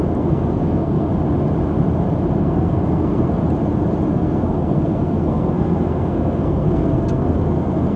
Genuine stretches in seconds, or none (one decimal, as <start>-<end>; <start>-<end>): 1.1-2.4; 3.4-4.1